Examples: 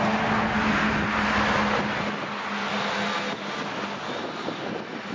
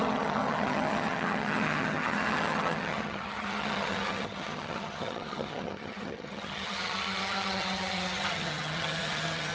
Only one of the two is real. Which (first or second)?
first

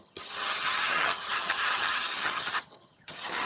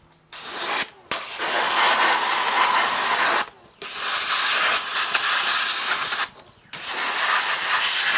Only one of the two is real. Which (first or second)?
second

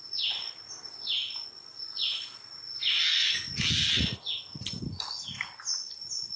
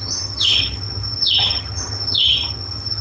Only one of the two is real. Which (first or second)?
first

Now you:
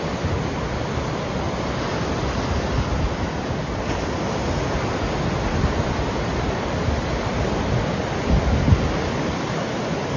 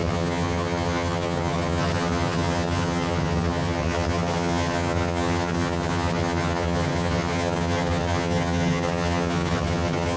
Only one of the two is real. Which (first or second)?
first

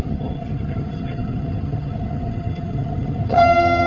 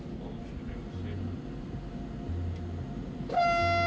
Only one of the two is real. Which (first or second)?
second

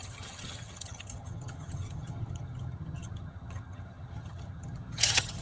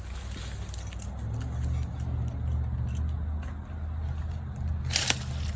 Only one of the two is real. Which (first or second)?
second